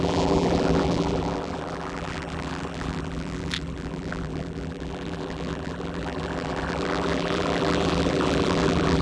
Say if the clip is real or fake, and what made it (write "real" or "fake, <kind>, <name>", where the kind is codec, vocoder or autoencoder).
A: fake, vocoder, BigVGAN v2